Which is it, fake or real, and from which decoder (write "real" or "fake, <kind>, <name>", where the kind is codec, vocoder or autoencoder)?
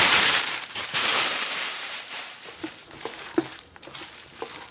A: fake, vocoder, BigVGAN v2